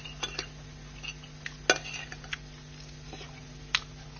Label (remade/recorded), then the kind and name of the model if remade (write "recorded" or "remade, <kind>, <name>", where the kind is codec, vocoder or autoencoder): recorded